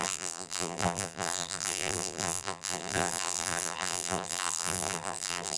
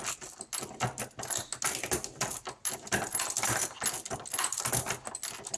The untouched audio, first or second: second